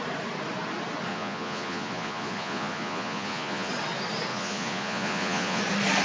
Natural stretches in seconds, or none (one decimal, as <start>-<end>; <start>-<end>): 0.0-1.1; 3.7-4.3; 5.6-6.0